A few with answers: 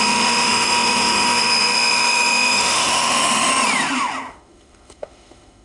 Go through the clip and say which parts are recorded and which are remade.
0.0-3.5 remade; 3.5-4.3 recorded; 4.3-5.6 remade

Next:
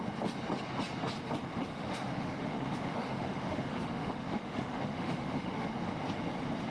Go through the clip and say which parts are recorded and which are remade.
0.0-1.7 recorded; 1.7-5.7 remade; 5.7-6.7 recorded

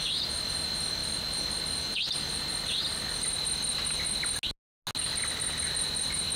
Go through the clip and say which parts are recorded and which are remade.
0.0-2.5 remade; 2.5-6.4 recorded

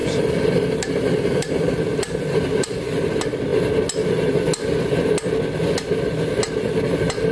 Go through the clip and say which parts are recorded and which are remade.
0.0-2.8 remade; 2.8-7.3 recorded

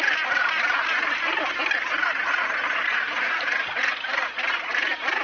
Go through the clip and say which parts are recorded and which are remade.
0.0-5.2 recorded

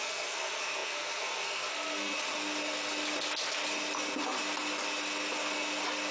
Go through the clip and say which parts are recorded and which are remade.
0.0-2.1 remade; 2.1-6.1 recorded

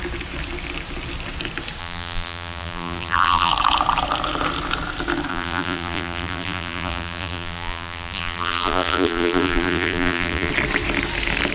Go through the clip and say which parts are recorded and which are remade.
0.0-1.8 recorded; 1.8-3.5 remade; 3.5-5.3 recorded; 5.3-10.5 remade; 10.5-11.5 recorded

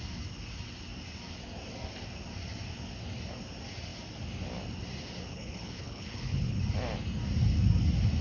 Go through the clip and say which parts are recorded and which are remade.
0.0-5.3 recorded; 5.3-6.6 remade; 6.6-8.2 recorded